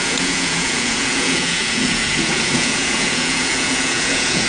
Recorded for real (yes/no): no